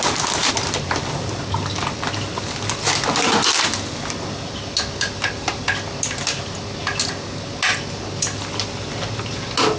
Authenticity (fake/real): real